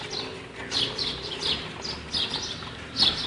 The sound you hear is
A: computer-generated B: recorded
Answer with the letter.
B